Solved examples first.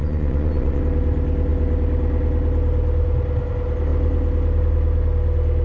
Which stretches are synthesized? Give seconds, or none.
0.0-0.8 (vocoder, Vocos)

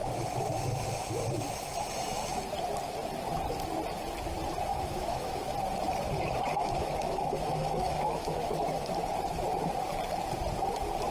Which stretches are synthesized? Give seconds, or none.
4.7-5.4 (autoencoder, DAC-VAE); 6.5-8.9

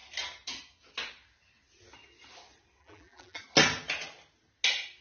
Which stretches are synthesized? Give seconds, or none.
2.8-3.4 (vocoder, BigVGAN v2)

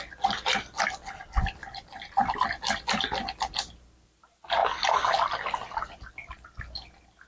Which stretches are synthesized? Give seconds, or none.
none